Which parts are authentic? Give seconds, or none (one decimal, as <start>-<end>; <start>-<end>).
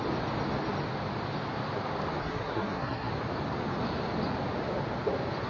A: 0.0-2.2; 3.1-5.5